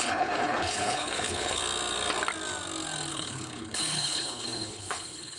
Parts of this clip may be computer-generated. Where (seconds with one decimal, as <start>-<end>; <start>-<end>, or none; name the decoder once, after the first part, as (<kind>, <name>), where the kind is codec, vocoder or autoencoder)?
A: 0.0-1.6 (codec, HILCodec); 3.1-5.4